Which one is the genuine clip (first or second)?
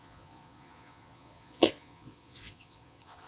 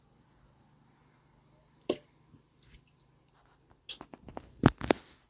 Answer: second